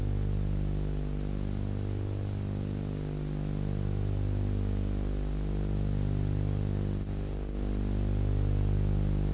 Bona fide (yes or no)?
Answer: yes